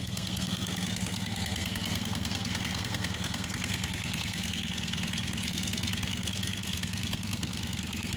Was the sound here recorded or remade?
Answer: remade